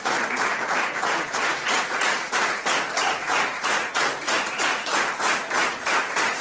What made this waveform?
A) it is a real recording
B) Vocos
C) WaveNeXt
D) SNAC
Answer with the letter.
B